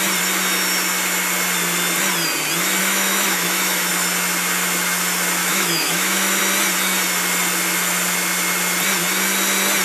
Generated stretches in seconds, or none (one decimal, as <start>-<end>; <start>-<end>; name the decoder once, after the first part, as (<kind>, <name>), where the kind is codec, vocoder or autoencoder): 2.8-3.9 (autoencoder, DAC-VAE); 5.4-6.4